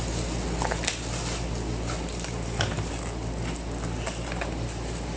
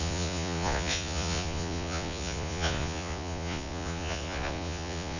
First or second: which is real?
first